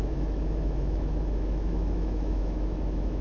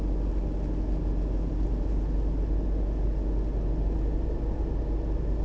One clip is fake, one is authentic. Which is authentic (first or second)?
second